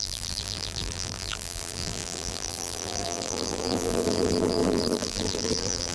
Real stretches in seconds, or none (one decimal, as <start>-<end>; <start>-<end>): none